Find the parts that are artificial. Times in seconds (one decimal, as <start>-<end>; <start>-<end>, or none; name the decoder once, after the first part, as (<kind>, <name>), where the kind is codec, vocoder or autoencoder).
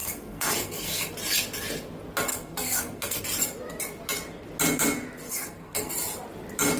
0.0-1.1 (codec, SNAC); 2.3-3.2; 5.3-5.9